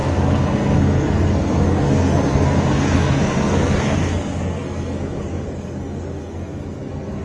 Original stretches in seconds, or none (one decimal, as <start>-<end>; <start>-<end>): none